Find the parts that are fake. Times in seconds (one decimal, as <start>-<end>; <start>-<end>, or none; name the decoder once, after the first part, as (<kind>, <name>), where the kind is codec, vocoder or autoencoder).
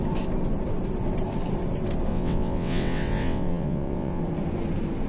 2.1-4.2 (vocoder, WaveNeXt)